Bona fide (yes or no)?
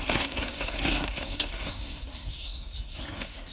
no